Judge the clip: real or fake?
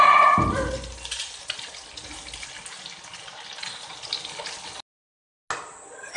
real